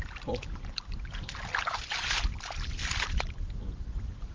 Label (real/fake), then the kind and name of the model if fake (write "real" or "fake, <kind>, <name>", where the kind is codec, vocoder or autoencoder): real